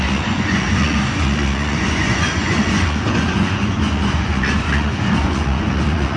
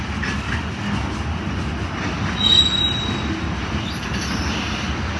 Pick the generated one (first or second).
first